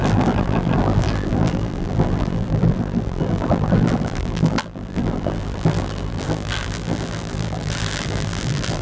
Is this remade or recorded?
remade